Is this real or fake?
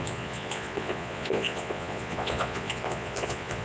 fake